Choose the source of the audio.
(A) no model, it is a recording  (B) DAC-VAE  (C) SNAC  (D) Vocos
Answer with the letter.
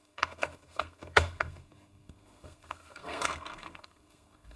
C